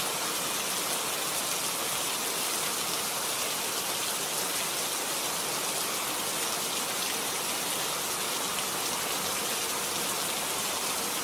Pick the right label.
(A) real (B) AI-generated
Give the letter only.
A